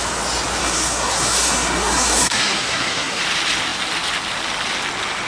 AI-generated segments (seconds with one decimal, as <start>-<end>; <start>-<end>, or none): 0.6-3.2